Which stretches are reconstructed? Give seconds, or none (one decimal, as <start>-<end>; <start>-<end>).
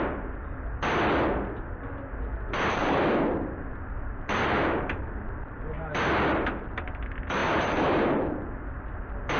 2.8-5.5; 7.4-8.5